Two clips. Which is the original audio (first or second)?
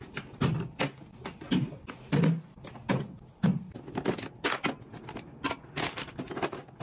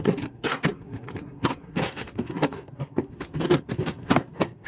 first